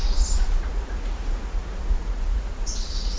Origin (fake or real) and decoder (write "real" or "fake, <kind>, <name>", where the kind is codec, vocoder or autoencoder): fake, vocoder, Vocos